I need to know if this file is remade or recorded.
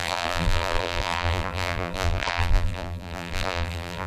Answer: remade